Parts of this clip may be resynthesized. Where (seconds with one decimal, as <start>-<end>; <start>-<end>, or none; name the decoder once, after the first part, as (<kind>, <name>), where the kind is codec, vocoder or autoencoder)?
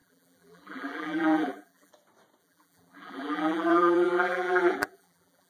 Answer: 0.0-1.9 (vocoder, BigVGAN v2); 2.4-5.5